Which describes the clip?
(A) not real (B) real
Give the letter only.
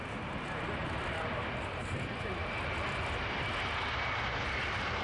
B